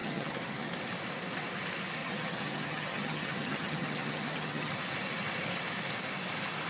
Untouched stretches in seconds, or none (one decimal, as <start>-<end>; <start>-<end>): 0.7-2.0; 4.7-6.7